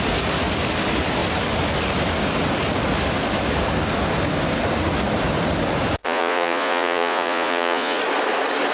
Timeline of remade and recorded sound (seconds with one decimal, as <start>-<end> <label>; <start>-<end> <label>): 0.0-6.0 recorded; 6.0-8.0 remade; 8.0-8.7 recorded